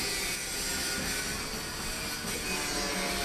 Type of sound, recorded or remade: recorded